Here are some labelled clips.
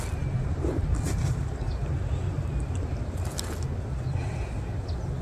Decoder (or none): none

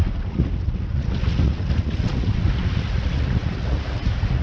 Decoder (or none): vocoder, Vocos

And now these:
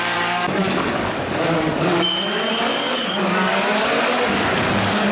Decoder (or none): codec, DAC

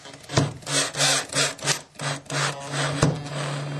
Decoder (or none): none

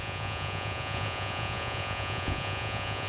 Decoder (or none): vocoder, Vocos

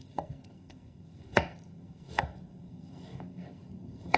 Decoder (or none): codec, SNAC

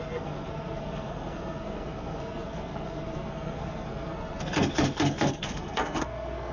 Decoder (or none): codec, SNAC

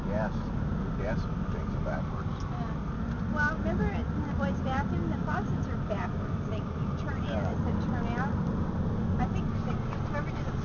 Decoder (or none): none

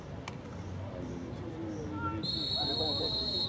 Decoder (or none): none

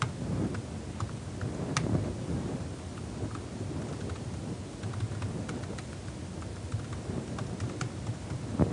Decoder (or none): none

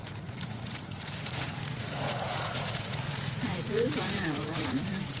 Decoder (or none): vocoder, Vocos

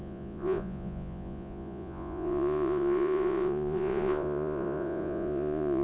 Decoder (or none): vocoder, Vocos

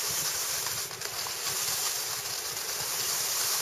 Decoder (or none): none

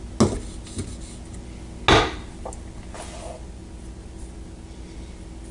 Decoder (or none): none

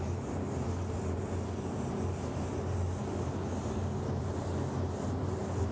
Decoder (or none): none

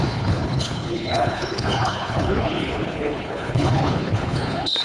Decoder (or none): codec, HILCodec